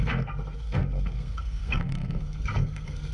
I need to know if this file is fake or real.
fake